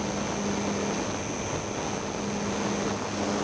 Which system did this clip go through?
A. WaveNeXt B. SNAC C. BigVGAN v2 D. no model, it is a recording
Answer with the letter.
D